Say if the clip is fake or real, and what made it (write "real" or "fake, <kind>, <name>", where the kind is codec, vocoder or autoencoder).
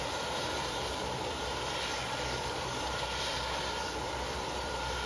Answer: fake, vocoder, BigVGAN v2